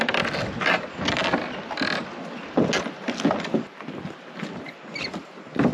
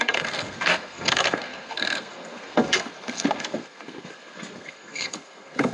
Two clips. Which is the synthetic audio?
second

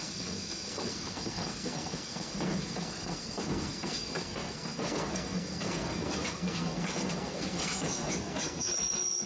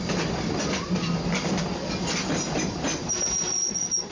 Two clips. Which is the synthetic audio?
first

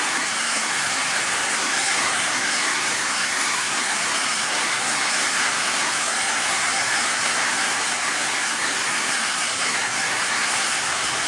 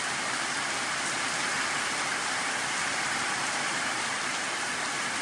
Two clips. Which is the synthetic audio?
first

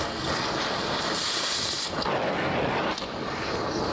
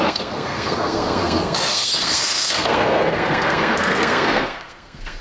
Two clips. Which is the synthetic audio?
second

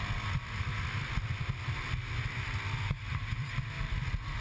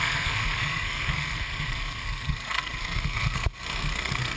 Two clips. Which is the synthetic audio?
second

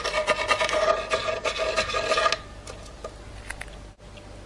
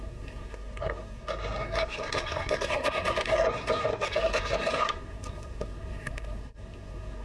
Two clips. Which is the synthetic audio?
second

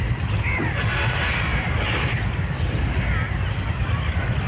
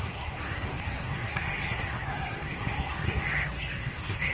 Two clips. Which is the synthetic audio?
second